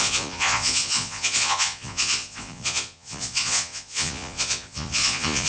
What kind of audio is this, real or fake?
fake